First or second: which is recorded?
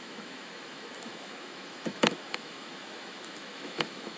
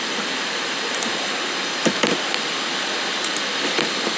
second